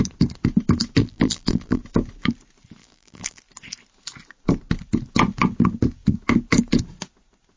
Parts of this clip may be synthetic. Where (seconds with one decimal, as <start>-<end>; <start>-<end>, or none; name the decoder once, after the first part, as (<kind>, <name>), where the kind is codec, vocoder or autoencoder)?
1.0-1.8 (vocoder, BigVGAN v2); 2.8-3.4